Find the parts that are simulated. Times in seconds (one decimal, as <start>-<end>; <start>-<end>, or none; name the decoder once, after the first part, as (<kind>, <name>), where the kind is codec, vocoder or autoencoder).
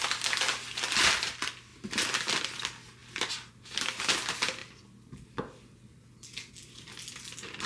none